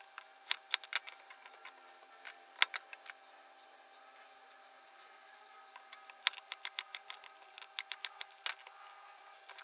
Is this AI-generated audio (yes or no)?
no